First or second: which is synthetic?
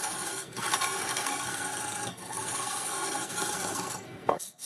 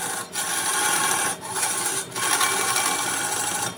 first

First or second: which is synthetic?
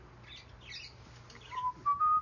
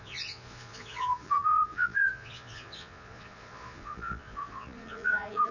second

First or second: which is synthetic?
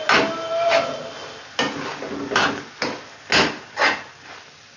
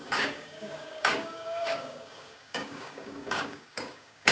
second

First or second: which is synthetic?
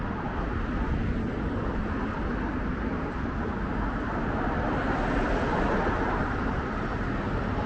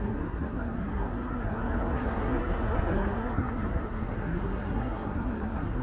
second